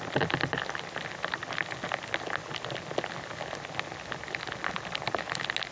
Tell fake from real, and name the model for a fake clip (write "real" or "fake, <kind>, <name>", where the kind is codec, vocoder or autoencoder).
real